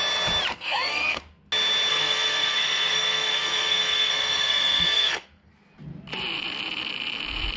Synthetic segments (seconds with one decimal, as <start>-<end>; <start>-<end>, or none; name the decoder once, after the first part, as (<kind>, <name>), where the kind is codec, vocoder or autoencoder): 0.5-1.2 (codec, SNAC); 1.9-5.5